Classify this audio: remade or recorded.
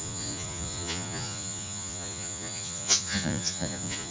remade